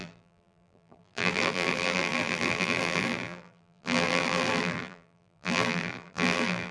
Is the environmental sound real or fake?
fake